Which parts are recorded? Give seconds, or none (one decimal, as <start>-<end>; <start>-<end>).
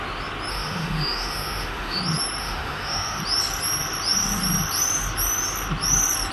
0.0-0.5; 2.0-2.4; 3.2-6.3